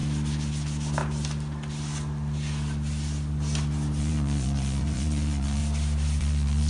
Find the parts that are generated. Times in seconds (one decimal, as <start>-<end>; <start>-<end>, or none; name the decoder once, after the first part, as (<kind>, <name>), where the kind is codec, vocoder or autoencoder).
4.0-5.6 (vocoder, Vocos); 6.2-6.7